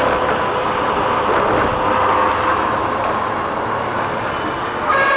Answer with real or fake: real